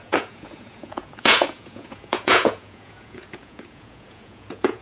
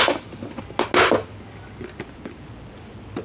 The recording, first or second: second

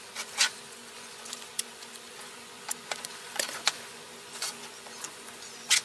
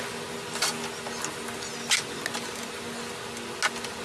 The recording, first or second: second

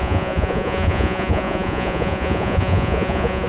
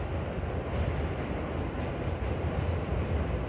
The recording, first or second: second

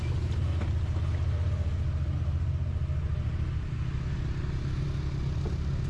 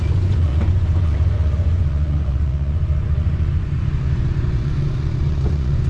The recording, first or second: first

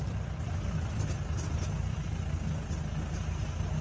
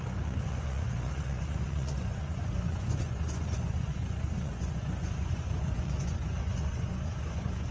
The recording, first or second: first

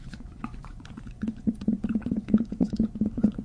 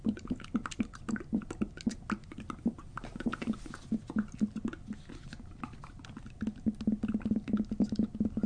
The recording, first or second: second